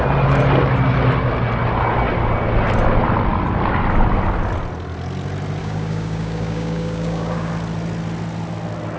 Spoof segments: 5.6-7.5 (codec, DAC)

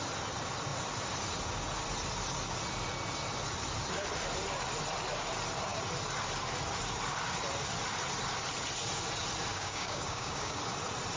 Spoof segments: 9.5-10.6 (codec, DAC)

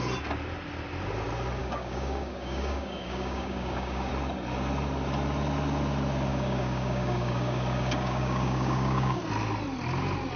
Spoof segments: 1.6-4.1 (codec, DAC); 6.3-9.2

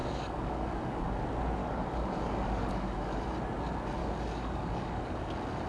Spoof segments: 0.0-1.2 (codec, DAC); 1.6-3.2; 4.0-5.3

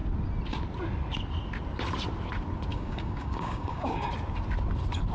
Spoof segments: 2.7-4.1 (codec, DAC)

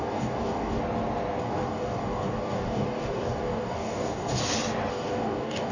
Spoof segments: 0.0-0.8 (codec, DAC); 1.4-4.4; 4.9-5.7